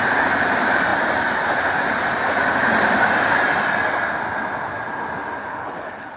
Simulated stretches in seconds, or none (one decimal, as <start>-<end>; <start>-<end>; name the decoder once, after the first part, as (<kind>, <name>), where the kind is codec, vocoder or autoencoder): 5.4-6.2 (codec, HILCodec)